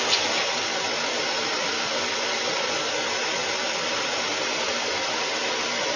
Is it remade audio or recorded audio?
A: recorded